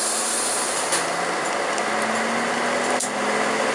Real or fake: real